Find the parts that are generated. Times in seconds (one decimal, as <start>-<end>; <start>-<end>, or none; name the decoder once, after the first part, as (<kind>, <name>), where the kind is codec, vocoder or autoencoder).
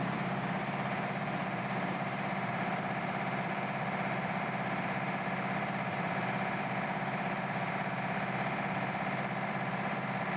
0.0-10.4 (vocoder, BigVGAN v2)